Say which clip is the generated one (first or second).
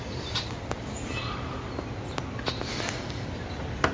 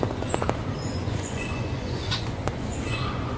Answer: second